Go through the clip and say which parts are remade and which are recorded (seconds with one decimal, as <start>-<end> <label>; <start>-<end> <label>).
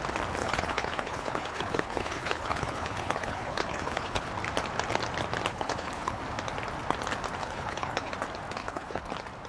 0.0-0.4 recorded; 0.4-4.3 remade; 4.3-5.5 recorded; 5.5-6.2 remade; 6.2-7.4 recorded; 7.4-8.1 remade; 8.1-8.6 recorded; 8.6-9.1 remade; 9.1-9.5 recorded